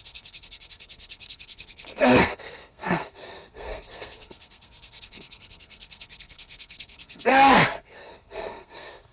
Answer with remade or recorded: remade